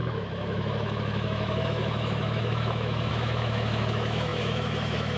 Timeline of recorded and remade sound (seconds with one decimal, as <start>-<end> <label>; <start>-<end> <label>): 0.0-5.2 remade